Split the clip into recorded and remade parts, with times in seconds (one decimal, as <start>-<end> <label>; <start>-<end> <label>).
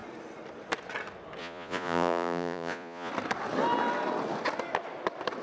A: 0.0-1.4 recorded; 1.4-3.1 remade; 3.1-5.4 recorded